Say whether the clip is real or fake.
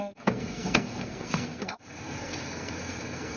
fake